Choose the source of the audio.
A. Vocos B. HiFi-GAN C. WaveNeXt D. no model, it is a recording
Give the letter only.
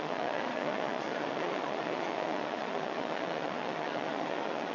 A